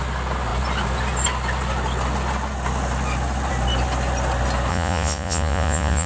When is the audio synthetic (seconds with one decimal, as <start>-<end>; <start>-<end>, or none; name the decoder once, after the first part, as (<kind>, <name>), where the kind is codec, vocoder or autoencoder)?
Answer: 4.7-6.1 (vocoder, Vocos)